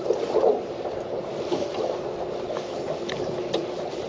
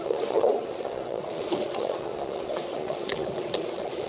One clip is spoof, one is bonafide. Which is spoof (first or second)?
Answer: second